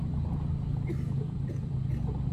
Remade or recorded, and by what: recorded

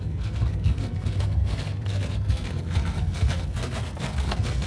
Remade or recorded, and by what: remade, codec, SNAC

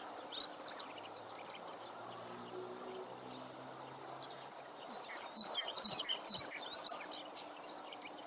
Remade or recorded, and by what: recorded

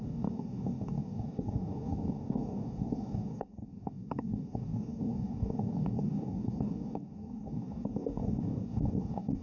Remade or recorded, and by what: remade, codec, DAC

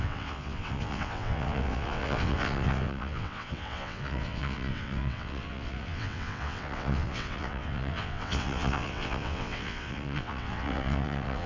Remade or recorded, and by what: remade, vocoder, WaveNeXt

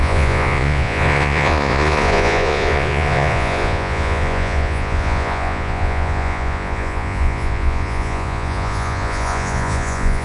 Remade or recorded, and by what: remade, vocoder, Vocos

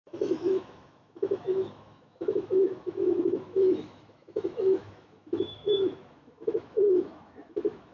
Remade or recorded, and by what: remade, autoencoder, DAC-VAE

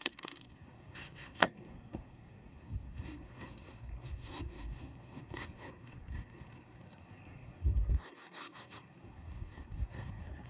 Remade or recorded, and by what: remade, codec, SNAC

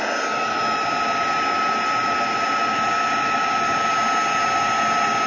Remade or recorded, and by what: recorded